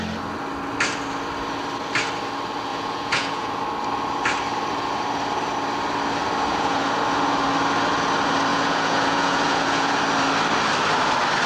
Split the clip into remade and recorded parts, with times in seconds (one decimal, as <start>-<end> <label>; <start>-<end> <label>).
0.0-2.7 recorded; 2.7-3.6 remade; 3.6-6.5 recorded; 6.5-7.0 remade; 7.0-8.5 recorded; 8.5-10.0 remade; 10.0-11.5 recorded